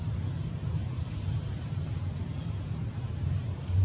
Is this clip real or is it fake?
fake